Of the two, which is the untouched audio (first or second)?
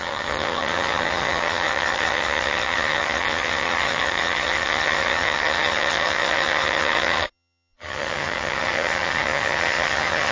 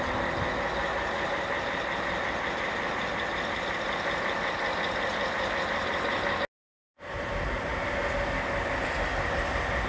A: second